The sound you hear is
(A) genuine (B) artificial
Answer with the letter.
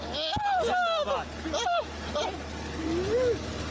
A